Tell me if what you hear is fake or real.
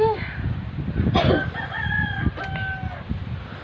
real